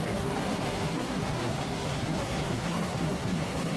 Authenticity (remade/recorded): remade